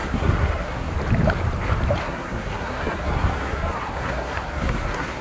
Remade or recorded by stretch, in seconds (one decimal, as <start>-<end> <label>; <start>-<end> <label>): 0.0-0.9 remade; 0.9-2.0 recorded; 2.0-5.2 remade